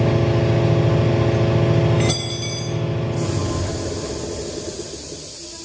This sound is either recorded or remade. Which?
recorded